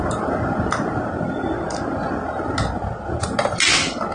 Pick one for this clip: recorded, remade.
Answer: recorded